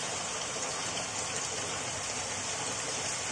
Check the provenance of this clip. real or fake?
real